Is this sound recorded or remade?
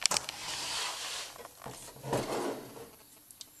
recorded